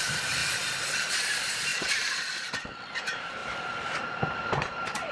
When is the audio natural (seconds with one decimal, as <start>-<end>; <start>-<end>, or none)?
0.4-1.1; 1.7-3.0